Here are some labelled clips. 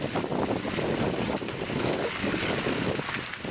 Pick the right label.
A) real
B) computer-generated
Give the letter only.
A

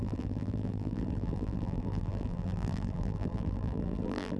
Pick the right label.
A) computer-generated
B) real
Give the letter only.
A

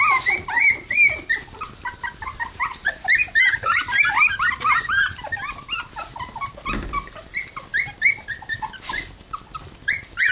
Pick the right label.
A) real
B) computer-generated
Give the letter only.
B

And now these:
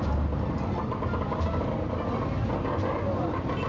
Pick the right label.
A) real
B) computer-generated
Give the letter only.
A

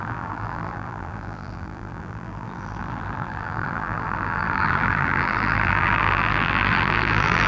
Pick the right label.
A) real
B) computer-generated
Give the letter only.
B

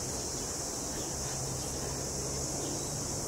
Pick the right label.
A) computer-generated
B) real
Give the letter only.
A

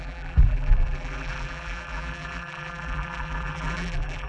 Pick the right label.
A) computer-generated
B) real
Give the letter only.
A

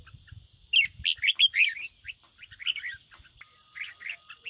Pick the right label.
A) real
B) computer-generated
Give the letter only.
A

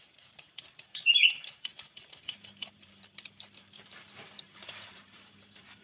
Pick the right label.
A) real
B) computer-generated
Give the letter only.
B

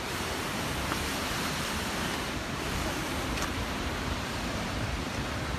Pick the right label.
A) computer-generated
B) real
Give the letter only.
A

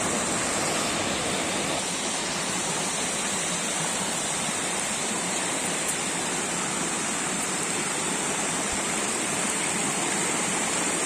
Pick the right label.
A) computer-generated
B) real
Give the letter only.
A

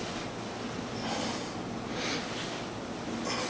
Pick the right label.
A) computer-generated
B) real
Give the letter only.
B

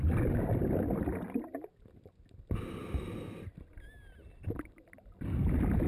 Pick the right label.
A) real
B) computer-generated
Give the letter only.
A